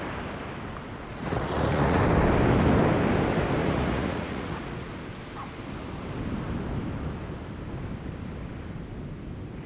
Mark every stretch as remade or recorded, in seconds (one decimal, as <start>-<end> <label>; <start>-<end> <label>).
0.0-1.1 recorded; 1.1-2.0 remade; 2.0-3.6 recorded; 3.6-4.9 remade; 4.9-9.7 recorded